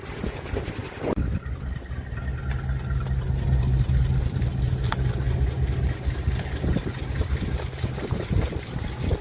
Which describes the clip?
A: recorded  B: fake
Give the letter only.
A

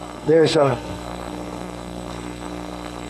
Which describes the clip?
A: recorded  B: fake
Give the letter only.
B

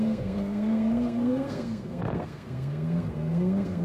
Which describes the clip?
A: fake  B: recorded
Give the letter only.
A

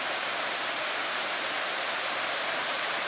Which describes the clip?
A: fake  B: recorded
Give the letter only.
A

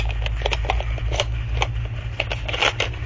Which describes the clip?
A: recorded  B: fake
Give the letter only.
A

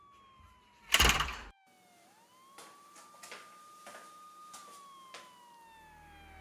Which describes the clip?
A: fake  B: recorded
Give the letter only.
B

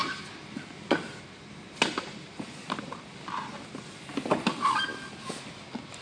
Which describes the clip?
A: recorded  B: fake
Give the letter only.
A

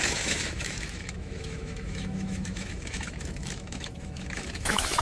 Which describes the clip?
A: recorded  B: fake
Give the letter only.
B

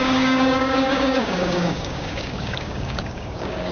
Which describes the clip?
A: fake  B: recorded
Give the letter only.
A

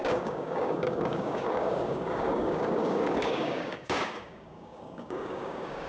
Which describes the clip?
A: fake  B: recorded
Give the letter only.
A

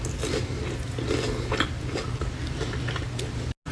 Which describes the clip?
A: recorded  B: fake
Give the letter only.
A